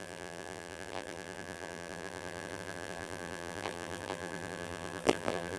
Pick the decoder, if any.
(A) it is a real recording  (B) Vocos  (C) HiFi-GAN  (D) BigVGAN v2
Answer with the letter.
D